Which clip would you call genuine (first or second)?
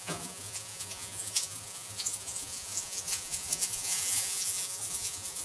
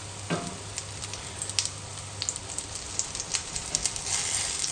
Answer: second